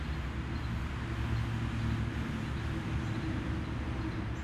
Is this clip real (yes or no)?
yes